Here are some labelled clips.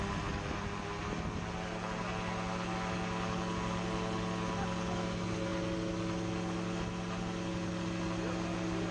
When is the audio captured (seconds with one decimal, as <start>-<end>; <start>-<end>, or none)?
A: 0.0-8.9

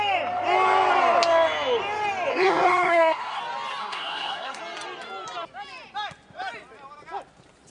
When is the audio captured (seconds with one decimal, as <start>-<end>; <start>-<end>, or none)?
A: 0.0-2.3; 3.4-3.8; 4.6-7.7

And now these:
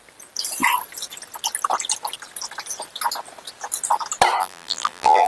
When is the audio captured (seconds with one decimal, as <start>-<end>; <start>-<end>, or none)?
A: 0.0-4.4

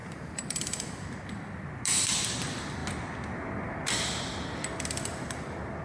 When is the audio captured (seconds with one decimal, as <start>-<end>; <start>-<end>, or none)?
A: 1.2-5.8